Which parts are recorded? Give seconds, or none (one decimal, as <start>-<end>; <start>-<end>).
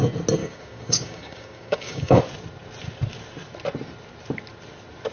0.0-0.4; 2.2-5.1